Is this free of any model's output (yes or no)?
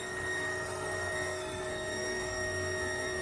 no